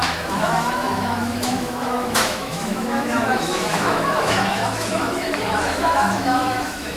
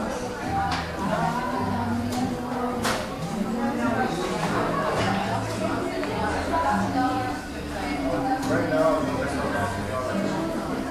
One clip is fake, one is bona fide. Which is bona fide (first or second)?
second